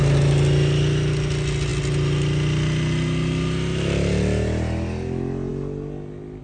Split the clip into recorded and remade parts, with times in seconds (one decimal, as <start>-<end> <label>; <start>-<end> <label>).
0.0-6.4 recorded